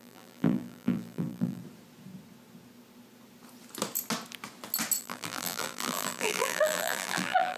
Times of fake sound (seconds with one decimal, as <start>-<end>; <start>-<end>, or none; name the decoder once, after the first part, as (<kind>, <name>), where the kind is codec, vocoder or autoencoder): 0.0-1.6 (vocoder, BigVGAN v2); 5.0-7.6